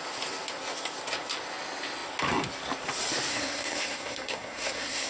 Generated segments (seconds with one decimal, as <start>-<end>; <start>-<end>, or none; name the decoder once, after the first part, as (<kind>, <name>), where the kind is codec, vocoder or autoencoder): 3.3-5.1 (codec, SNAC)